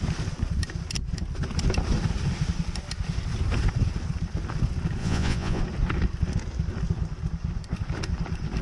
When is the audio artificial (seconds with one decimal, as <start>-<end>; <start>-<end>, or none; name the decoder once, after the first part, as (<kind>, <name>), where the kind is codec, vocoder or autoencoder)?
5.0-5.6 (vocoder, Vocos)